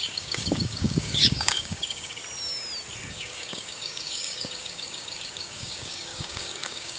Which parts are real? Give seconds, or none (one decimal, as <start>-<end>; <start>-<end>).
2.2-3.1